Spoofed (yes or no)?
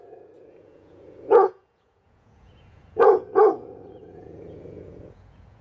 yes